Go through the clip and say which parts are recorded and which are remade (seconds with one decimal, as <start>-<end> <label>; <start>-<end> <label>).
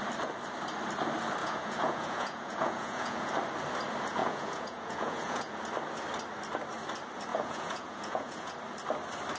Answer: 0.0-1.4 recorded; 1.4-3.3 remade; 3.3-4.2 recorded; 4.2-5.5 remade; 5.5-7.3 recorded; 7.3-8.5 remade; 8.5-9.4 recorded